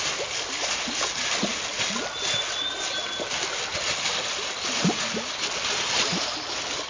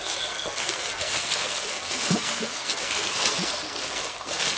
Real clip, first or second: first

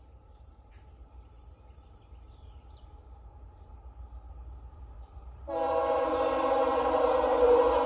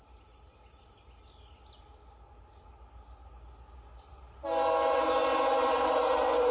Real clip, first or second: second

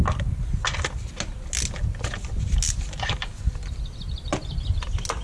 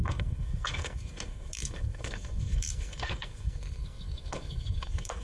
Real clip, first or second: first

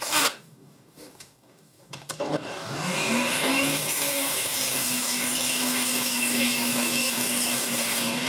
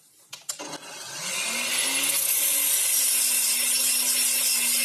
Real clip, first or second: second